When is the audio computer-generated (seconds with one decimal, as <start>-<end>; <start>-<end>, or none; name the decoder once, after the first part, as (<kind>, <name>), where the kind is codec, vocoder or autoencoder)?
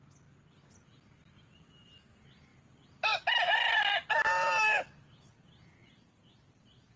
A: none